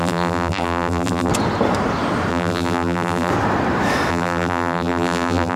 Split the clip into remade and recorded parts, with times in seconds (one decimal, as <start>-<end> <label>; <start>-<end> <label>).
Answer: 0.0-1.3 remade; 1.3-2.3 recorded; 2.3-3.3 remade; 3.3-4.1 recorded; 4.1-5.6 remade